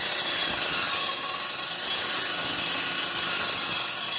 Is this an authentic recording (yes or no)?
yes